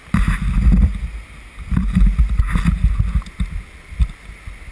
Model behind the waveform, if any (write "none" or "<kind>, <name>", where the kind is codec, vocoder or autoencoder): none